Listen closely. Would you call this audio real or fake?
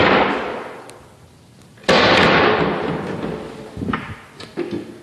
real